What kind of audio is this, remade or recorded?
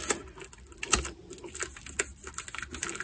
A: recorded